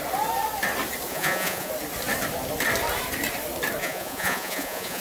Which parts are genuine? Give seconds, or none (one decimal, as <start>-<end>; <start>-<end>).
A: 0.0-1.1; 1.7-3.8